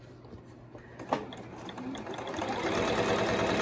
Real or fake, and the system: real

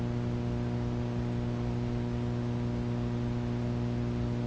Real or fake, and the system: real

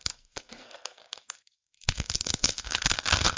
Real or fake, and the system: fake, codec, SNAC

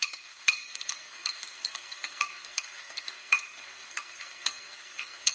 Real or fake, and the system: fake, codec, SNAC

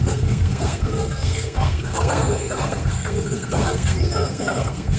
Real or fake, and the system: fake, codec, SNAC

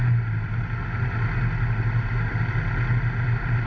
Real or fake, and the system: real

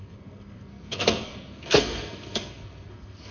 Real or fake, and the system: fake, codec, SNAC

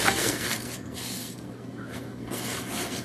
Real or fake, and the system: fake, codec, SNAC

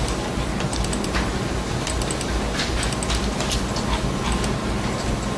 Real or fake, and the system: real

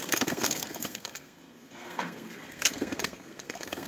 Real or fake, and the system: fake, codec, SNAC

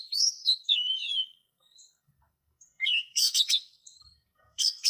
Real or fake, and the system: fake, codec, SNAC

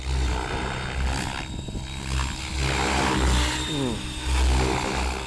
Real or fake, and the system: real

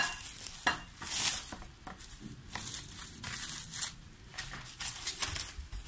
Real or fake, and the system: real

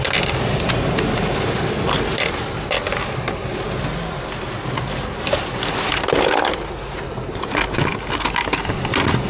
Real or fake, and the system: real